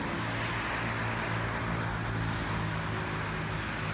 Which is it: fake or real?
real